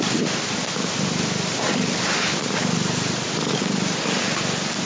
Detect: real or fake real